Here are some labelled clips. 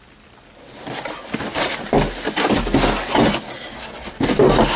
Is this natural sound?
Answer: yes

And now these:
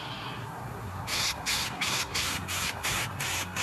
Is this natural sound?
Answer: no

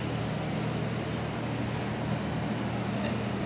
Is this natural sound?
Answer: yes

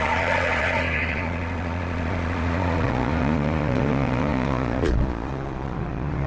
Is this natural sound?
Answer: no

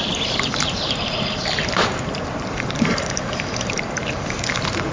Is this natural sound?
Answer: no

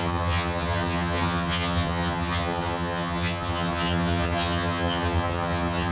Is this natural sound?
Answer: no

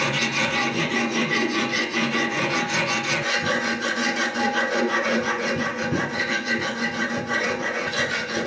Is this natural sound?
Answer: no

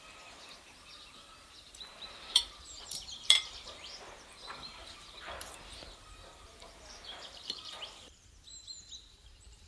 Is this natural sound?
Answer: no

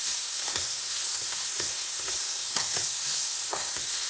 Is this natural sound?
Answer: no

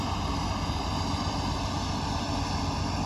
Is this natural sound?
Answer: yes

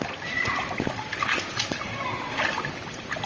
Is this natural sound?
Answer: yes